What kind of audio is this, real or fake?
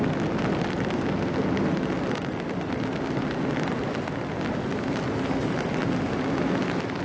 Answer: real